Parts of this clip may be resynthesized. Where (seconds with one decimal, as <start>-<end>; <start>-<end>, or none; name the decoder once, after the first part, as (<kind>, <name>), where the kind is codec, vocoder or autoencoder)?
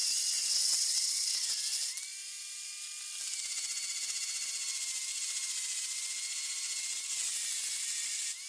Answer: 0.0-1.6 (vocoder, WaveNeXt)